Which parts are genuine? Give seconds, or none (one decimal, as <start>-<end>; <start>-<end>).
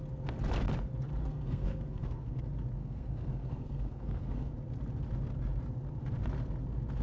0.0-1.2; 2.4-2.8; 4.5-7.0